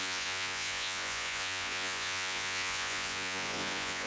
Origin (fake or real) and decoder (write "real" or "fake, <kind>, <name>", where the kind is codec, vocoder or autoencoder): fake, vocoder, Vocos